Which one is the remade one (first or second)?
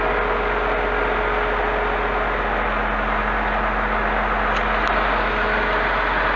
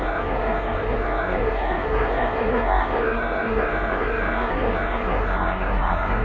second